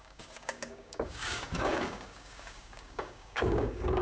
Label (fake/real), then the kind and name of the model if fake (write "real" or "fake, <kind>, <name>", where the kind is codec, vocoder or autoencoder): fake, codec, DAC